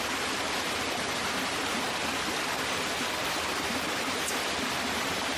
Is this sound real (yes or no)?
no